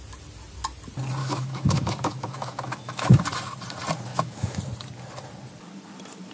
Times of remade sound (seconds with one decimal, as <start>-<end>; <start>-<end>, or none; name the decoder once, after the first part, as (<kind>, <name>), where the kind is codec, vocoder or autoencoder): 1.2-3.2 (autoencoder, DAC-VAE); 4.1-4.6